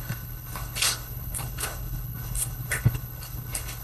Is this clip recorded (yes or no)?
no